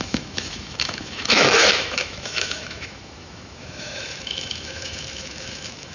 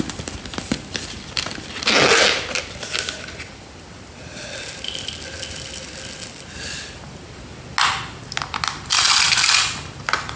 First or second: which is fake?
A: first